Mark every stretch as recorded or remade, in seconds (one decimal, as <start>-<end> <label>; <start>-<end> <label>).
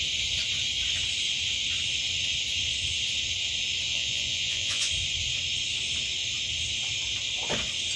0.0-3.9 recorded; 3.9-4.9 remade; 4.9-8.0 recorded